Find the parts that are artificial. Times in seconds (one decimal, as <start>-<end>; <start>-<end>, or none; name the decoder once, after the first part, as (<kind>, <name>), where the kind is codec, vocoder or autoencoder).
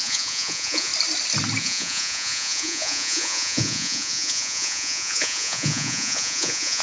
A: 0.0-0.9 (vocoder, Vocos); 1.6-6.8